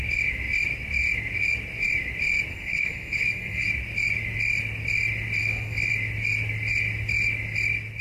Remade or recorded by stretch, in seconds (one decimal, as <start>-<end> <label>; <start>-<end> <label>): 0.0-2.5 recorded; 2.5-3.7 remade; 3.7-5.4 recorded; 5.4-5.9 remade; 5.9-8.0 recorded